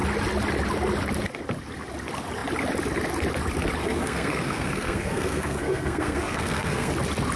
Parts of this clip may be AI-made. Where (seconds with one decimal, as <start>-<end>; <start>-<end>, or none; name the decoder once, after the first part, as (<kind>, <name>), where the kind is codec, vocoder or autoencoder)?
3.8-6.9 (codec, SNAC)